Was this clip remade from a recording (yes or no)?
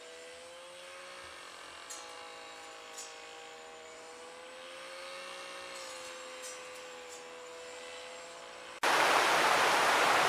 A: no